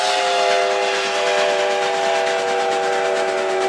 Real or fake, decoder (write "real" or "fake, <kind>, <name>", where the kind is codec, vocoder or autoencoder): real